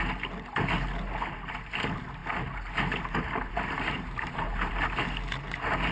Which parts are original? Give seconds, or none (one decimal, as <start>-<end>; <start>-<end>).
0.0-3.5; 4.7-5.9